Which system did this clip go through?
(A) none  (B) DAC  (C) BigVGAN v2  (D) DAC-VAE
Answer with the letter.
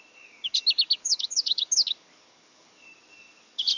B